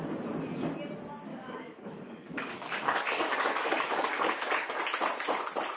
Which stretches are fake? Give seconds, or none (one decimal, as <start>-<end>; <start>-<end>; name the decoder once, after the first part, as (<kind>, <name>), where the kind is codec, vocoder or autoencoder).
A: 1.3-4.8 (codec, DAC)